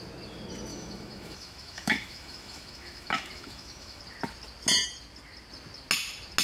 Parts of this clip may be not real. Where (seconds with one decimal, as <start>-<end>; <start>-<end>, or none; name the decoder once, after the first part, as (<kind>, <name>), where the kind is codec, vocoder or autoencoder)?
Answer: 0.7-4.0 (autoencoder, DAC-VAE)